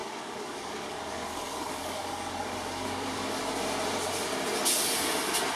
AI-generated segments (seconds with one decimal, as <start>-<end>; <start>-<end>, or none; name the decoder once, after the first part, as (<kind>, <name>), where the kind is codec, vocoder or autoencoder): 0.0-3.4 (codec, DAC)